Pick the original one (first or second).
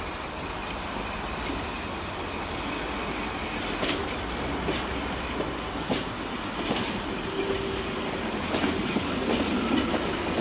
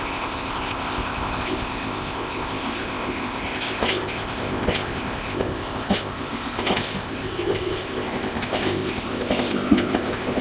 first